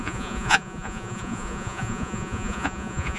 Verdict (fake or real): fake